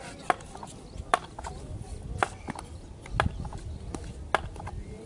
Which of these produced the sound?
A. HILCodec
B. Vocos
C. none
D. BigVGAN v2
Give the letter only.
C